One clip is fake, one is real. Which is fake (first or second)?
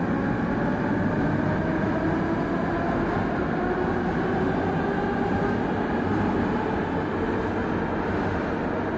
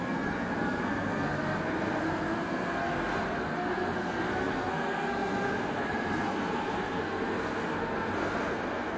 second